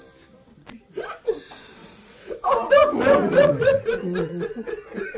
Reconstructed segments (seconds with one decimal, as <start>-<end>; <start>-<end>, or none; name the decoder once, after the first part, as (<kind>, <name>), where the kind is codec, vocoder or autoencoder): 1.8-5.2 (vocoder, Vocos)